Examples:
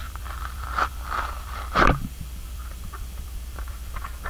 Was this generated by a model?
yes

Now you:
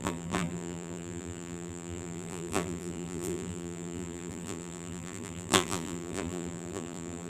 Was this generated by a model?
yes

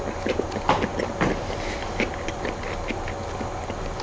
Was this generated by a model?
no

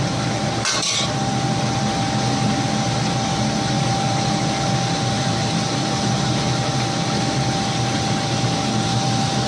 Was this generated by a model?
no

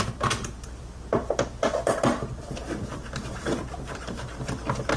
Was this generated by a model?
yes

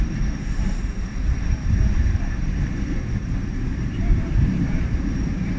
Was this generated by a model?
yes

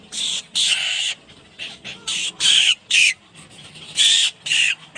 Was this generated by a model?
no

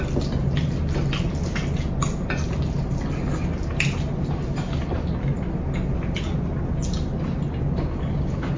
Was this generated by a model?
no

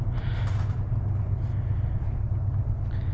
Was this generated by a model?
no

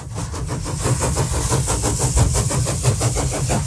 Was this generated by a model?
no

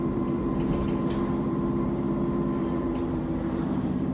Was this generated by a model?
yes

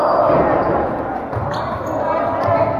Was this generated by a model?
no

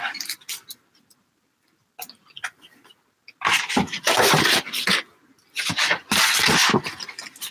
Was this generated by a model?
no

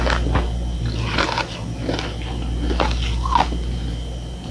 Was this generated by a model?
no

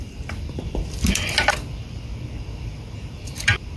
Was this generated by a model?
yes